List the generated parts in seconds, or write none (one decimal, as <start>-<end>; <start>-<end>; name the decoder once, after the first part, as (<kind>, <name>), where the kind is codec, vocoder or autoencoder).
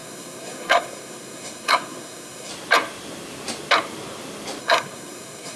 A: 0.0-2.5 (codec, SNAC); 4.6-5.6